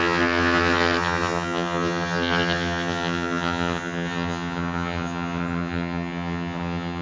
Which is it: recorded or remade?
remade